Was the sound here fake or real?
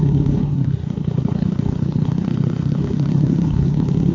fake